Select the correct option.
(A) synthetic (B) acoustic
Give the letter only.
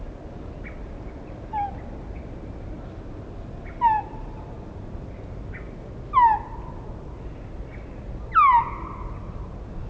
B